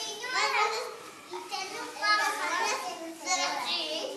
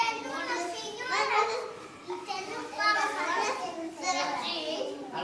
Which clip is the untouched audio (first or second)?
first